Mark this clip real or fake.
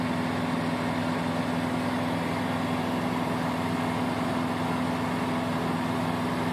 real